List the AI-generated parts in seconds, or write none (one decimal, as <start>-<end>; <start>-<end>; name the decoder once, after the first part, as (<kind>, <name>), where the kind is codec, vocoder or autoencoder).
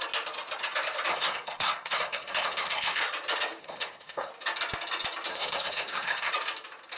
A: 1.1-3.0 (codec, SNAC); 3.6-4.3; 5.3-6.3